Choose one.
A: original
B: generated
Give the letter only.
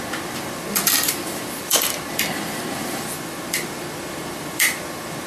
B